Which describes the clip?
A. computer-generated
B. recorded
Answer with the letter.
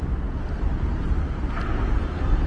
B